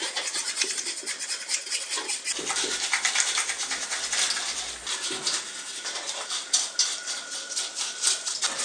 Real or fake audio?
real